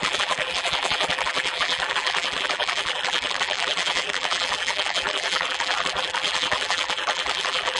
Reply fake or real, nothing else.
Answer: fake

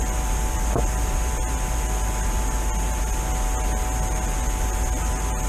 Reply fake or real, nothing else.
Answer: real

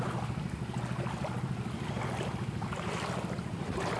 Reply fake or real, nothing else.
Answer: real